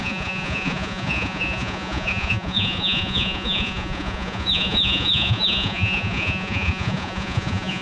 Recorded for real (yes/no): no